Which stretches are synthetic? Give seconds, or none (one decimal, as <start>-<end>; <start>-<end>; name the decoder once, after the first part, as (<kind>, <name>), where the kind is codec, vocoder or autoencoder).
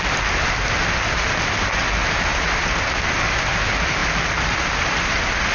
none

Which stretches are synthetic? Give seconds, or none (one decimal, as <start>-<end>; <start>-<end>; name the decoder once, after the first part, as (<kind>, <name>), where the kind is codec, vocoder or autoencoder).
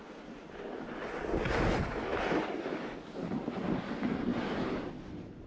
none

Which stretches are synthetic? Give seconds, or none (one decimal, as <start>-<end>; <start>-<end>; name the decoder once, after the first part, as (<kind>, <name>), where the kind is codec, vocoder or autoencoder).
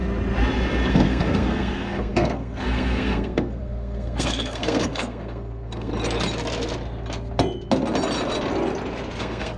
0.9-5.9 (codec, SNAC); 9.2-9.6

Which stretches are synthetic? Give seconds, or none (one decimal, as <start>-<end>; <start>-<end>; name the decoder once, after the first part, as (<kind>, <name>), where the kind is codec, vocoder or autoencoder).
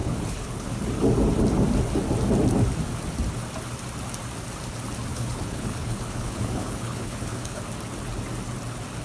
0.0-0.7 (codec, HILCodec); 5.1-7.6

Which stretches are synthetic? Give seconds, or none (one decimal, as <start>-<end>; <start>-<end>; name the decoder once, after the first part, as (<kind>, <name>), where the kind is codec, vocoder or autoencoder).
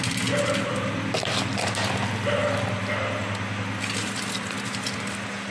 none